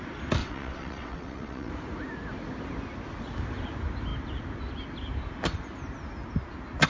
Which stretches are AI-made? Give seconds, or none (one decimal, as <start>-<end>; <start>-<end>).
0.4-1.7